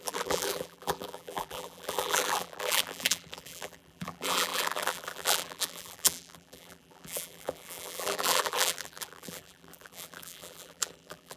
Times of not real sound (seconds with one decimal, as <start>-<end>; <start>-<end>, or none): 0.0-11.4